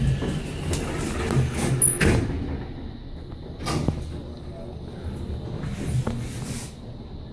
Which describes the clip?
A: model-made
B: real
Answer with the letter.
B